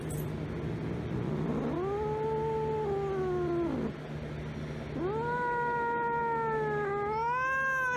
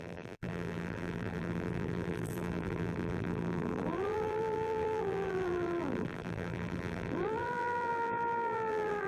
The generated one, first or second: second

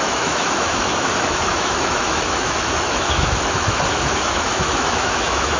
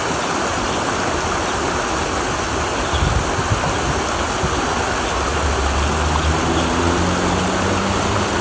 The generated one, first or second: first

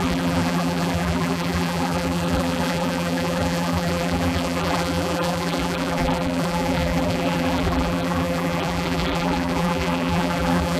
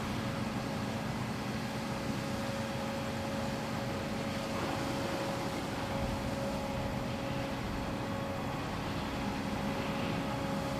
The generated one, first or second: first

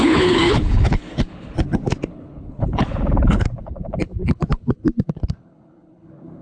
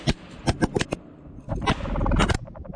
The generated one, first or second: first